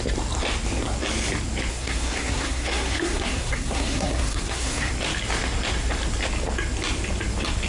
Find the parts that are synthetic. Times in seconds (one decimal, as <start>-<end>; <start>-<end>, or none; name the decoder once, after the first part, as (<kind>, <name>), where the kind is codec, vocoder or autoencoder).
1.7-4.9 (codec, SNAC)